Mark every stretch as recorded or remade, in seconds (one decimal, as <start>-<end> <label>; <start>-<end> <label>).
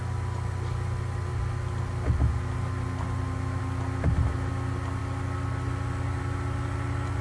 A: 0.0-7.2 recorded